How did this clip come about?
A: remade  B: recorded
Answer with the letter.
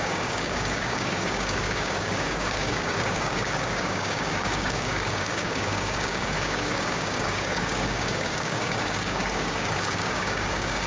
A